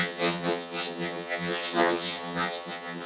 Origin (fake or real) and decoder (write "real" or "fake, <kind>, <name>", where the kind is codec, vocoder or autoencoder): fake, vocoder, HiFi-GAN